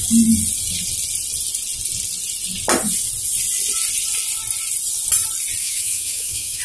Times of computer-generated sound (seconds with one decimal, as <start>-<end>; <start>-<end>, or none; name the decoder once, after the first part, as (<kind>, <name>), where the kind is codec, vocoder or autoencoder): 5.6-6.6 (autoencoder, DAC-VAE)